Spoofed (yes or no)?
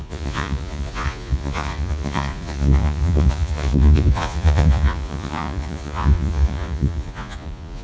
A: yes